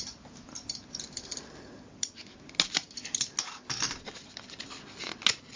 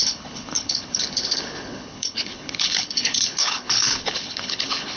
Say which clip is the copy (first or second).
second